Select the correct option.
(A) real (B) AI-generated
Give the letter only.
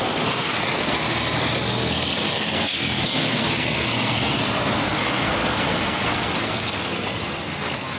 B